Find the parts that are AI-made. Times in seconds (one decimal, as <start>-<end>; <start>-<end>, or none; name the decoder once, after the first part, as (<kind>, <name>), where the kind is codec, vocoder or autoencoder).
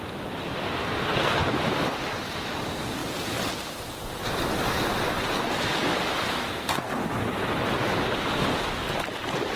0.8-1.4 (codec, SNAC); 6.4-6.9